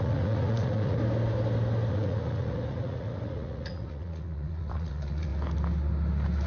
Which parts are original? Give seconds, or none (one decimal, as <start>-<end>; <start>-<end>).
1.0-1.9; 5.3-6.5